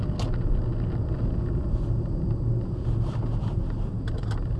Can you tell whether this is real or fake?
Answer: real